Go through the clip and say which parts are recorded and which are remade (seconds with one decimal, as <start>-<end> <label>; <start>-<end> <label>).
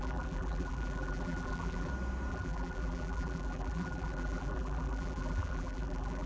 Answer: 0.0-1.9 remade; 1.9-2.3 recorded; 2.3-6.3 remade